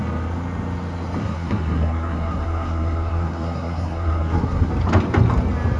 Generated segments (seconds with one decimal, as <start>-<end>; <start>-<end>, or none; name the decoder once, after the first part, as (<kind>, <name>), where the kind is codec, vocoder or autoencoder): 1.2-4.7 (codec, SNAC)